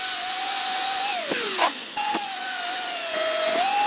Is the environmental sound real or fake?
fake